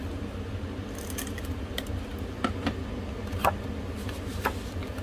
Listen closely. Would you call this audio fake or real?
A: real